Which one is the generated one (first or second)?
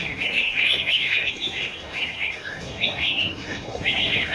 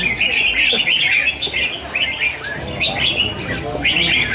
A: first